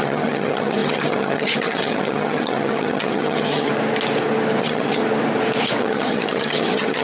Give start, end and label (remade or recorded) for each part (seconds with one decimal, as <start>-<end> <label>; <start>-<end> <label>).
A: 0.0-3.7 remade; 3.7-4.6 recorded; 4.6-5.0 remade; 5.0-5.8 recorded; 5.8-7.0 remade